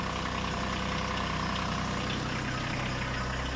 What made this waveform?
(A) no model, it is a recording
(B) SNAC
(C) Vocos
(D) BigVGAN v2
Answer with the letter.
A